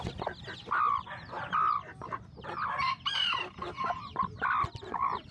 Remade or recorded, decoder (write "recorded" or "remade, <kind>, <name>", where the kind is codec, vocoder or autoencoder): recorded